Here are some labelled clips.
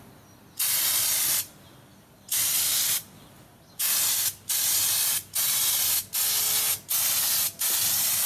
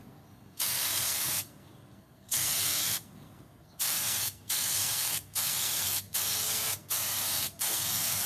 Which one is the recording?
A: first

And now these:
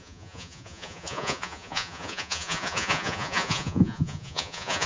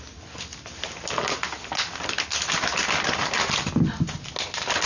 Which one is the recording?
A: second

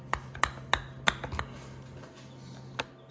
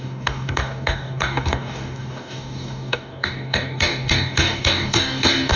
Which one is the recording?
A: first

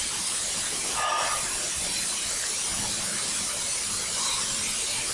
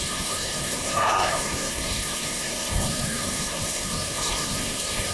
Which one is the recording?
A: first